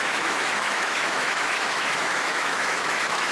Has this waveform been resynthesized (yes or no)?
yes